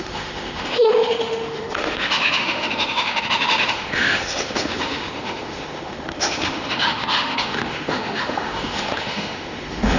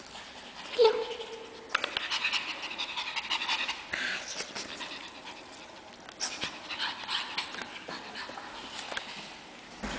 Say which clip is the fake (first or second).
first